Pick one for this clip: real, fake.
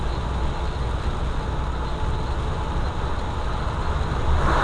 real